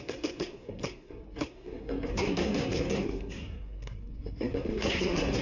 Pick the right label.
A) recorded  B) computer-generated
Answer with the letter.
B